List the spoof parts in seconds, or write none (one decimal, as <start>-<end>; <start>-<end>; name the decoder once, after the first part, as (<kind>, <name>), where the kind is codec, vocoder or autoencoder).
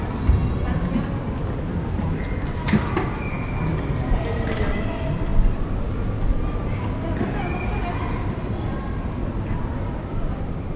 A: 0.4-1.3 (vocoder, BigVGAN v2)